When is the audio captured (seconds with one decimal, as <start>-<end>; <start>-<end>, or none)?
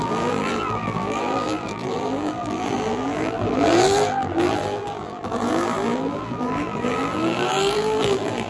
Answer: none